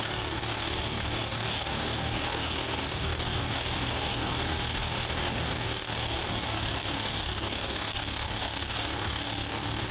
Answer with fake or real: fake